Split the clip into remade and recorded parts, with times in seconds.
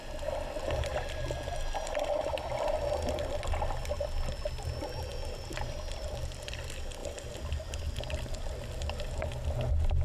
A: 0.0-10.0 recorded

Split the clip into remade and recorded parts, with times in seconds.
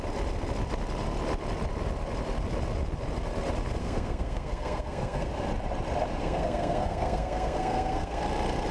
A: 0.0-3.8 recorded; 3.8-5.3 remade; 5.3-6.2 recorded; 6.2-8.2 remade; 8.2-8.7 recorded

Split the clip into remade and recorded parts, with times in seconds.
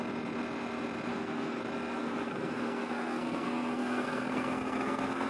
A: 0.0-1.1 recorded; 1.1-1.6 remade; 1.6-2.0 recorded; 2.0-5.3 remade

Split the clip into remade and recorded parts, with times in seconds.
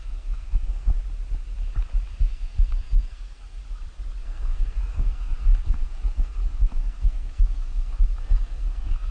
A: 0.0-0.9 remade; 0.9-2.2 recorded; 2.2-3.6 remade; 3.6-4.2 recorded; 4.2-9.1 remade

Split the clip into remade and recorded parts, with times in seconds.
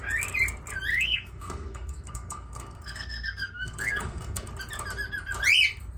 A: 0.0-0.9 recorded; 0.9-4.5 remade; 4.5-6.0 recorded